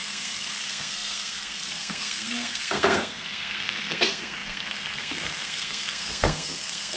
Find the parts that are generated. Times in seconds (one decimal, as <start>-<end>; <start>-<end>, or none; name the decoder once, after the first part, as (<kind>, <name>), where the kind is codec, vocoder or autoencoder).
0.0-7.0 (codec, SNAC)